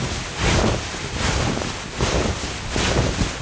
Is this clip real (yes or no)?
yes